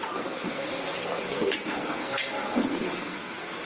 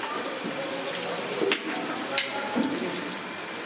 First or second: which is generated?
first